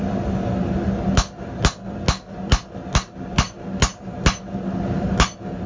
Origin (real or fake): real